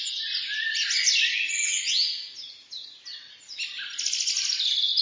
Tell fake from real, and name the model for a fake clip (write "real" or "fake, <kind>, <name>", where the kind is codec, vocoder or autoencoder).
real